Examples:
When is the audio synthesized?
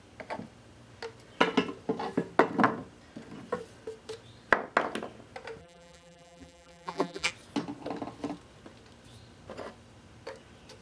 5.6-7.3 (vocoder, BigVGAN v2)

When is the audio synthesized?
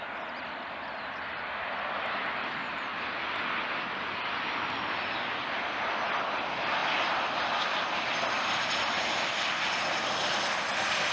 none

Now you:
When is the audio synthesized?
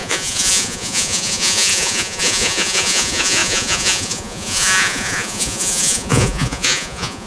0.0-7.3 (vocoder, Vocos)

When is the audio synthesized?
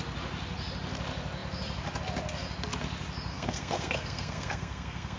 3.3-5.2 (codec, SNAC)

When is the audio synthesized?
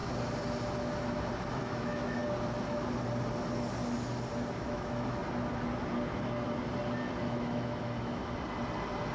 1.5-2.2 (autoencoder, DAC-VAE); 4.5-5.2; 7.2-8.2